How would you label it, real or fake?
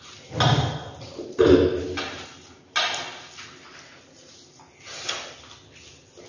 real